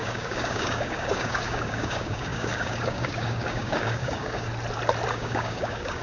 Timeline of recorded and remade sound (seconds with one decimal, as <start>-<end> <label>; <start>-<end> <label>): 0.0-4.5 remade; 4.5-5.1 recorded; 5.1-6.0 remade